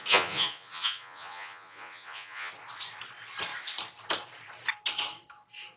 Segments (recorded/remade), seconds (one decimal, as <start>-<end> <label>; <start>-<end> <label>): 0.0-2.5 remade; 2.5-5.8 recorded